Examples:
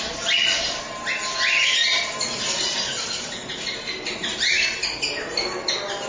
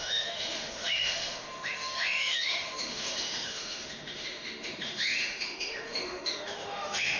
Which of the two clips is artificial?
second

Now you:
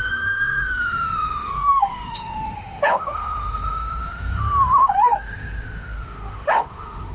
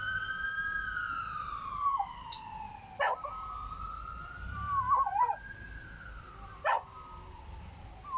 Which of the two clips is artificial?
first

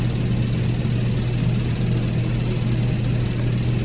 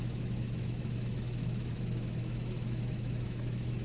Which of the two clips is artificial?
second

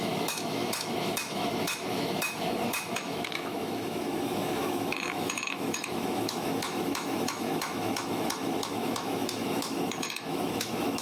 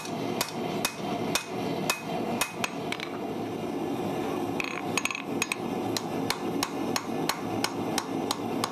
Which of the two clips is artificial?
first